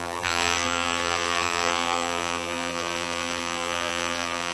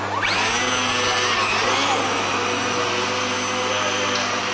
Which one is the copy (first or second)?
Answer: first